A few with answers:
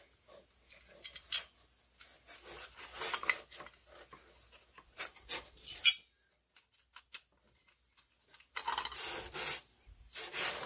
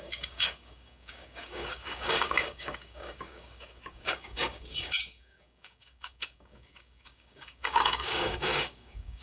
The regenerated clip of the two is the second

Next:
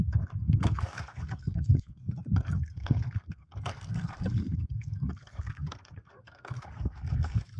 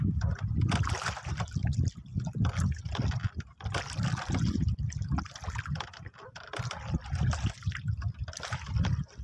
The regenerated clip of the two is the first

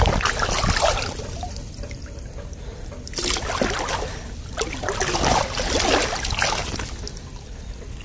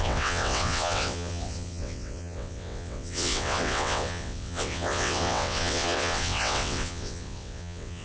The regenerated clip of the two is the second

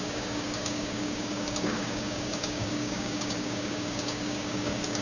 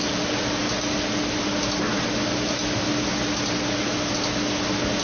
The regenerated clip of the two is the first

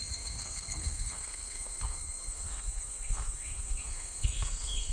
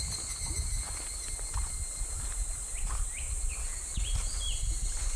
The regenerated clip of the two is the first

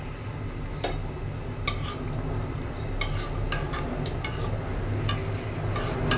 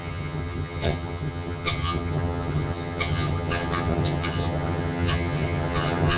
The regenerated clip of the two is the second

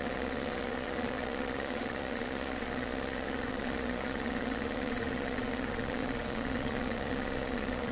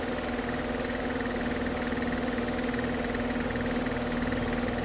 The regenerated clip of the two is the first